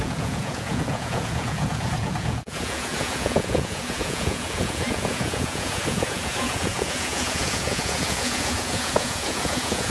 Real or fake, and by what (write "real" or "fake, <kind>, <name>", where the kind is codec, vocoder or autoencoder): fake, vocoder, Vocos